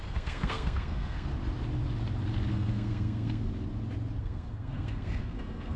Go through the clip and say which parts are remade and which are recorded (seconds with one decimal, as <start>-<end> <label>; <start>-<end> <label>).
0.0-1.3 remade; 1.3-2.5 recorded; 2.5-3.5 remade; 3.5-4.2 recorded; 4.2-5.8 remade